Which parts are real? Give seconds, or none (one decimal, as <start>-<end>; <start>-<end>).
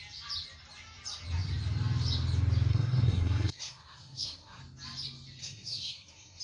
0.0-2.7; 4.6-5.4